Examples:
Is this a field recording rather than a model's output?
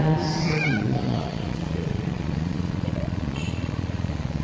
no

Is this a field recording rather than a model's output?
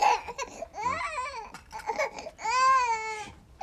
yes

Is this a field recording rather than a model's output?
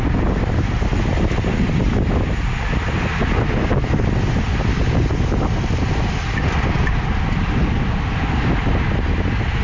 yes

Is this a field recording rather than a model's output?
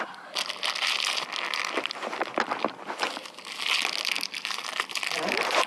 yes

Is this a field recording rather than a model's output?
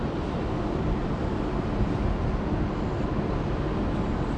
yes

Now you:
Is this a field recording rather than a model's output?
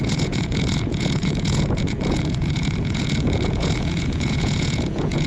no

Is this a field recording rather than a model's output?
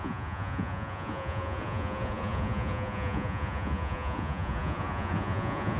no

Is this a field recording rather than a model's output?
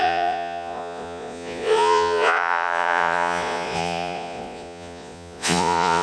no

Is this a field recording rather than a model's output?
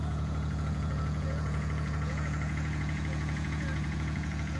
no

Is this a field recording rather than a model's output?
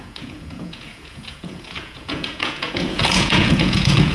no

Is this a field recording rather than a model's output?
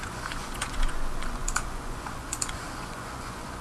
no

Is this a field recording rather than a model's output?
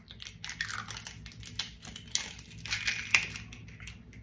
yes